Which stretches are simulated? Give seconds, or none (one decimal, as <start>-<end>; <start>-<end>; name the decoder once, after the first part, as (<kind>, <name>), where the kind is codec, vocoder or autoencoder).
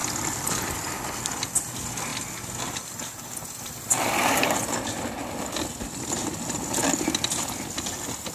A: 0.0-0.9 (vocoder, BigVGAN v2)